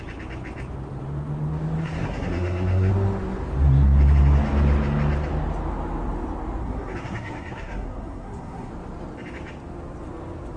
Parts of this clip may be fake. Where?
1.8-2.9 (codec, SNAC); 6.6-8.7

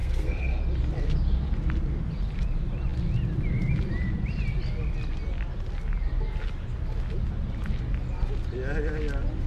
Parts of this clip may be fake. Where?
0.0-0.6 (codec, SNAC)

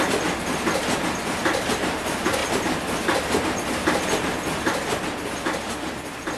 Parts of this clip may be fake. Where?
2.4-6.4 (vocoder, BigVGAN v2)

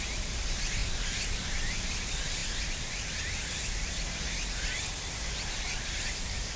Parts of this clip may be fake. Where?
none

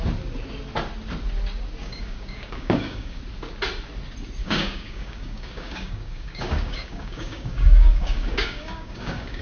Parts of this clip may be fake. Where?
1.8-3.2 (codec, DAC); 4.4-9.4

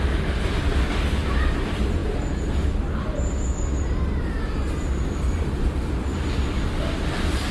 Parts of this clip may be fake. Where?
none